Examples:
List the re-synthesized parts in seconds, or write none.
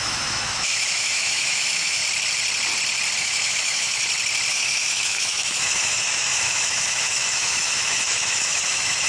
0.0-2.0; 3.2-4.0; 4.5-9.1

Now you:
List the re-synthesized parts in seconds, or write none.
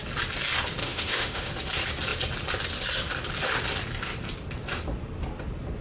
0.8-1.5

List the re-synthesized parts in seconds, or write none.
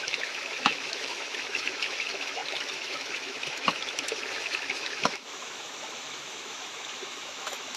0.0-7.8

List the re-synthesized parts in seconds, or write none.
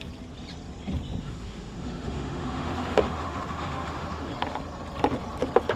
1.2-4.3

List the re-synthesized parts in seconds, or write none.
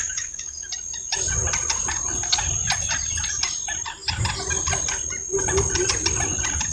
0.0-0.7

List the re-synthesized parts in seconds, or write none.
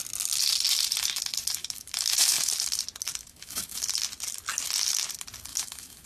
1.6-2.5; 3.2-3.8; 5.5-6.1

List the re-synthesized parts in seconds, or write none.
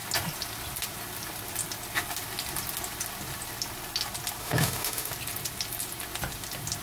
4.4-5.1